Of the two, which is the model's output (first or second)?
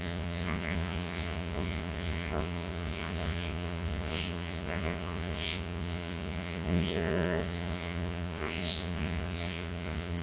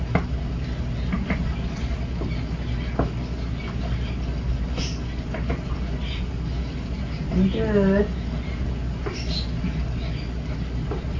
first